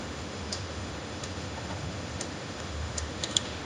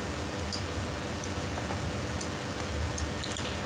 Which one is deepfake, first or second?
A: first